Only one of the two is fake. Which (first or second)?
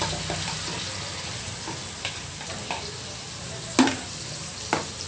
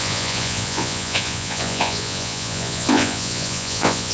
second